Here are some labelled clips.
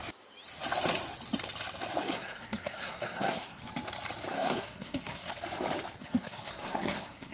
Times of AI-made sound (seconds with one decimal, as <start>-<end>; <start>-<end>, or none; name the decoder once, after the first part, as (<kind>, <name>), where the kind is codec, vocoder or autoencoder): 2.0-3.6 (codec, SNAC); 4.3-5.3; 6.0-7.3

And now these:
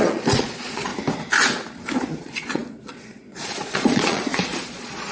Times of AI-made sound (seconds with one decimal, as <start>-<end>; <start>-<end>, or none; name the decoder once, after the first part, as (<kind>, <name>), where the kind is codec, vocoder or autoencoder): 0.0-0.9 (vocoder, Vocos); 2.2-5.1

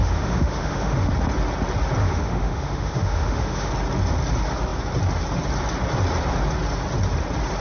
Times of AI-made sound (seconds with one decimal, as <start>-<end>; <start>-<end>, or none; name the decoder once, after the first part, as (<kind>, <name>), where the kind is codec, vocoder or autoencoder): 0.0-1.1 (autoencoder, DAC-VAE); 2.0-3.7

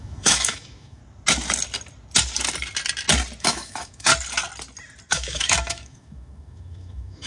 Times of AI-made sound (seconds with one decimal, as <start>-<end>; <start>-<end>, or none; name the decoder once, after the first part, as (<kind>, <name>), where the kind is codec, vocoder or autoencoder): 0.0-1.0 (autoencoder, DAC-VAE); 3.4-4.1; 5.1-7.3